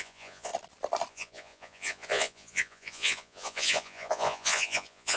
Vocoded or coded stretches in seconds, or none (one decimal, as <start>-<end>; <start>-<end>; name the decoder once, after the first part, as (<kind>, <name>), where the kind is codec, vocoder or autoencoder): 0.0-0.5 (vocoder, Vocos); 1.1-5.2